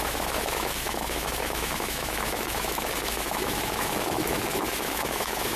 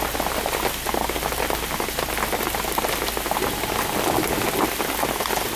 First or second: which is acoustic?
second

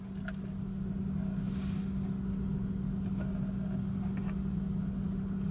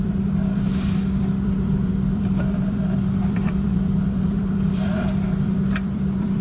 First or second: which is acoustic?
first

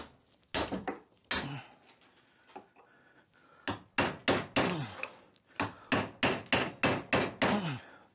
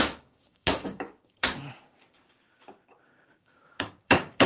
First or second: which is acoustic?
first